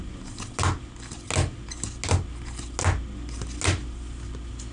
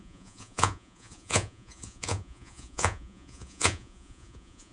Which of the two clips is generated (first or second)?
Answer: second